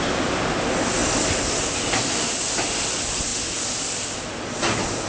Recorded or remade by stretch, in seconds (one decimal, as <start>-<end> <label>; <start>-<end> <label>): 0.0-5.1 recorded